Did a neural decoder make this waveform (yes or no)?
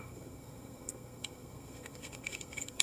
yes